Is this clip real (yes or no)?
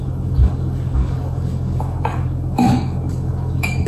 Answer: no